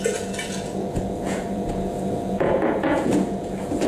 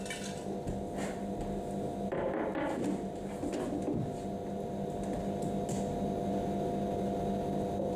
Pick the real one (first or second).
second